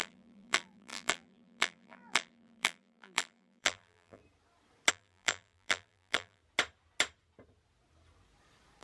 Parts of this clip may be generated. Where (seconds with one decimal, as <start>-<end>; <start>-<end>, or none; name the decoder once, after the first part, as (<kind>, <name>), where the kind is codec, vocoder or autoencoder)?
0.0-4.2 (vocoder, BigVGAN v2); 4.9-6.4